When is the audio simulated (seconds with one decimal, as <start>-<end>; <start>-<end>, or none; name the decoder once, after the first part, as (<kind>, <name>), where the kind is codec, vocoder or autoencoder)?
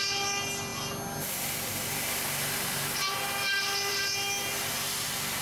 none